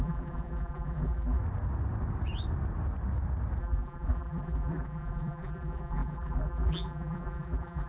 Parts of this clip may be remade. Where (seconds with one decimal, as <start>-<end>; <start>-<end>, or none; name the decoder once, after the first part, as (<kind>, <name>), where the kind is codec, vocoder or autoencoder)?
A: 0.0-1.4 (vocoder, BigVGAN v2); 3.6-7.9